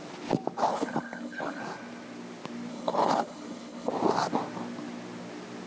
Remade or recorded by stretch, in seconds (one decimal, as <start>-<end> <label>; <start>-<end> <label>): 0.0-0.7 recorded; 0.7-1.6 remade; 1.6-2.7 recorded; 2.7-3.9 remade; 3.9-5.7 recorded